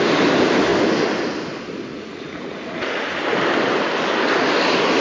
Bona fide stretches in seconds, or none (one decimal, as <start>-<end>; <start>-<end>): 0.0-1.9; 3.2-5.0